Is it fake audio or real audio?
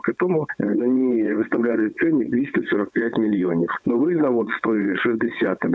fake